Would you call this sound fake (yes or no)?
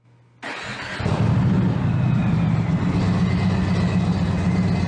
no